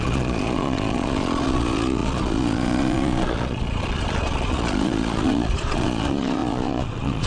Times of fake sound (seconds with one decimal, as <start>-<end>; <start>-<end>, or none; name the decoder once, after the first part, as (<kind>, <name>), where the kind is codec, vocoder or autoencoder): 0.0-7.3 (vocoder, Vocos)